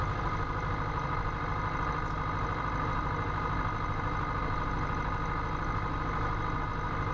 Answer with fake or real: real